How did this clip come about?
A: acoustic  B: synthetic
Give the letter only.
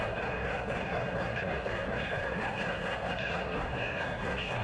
B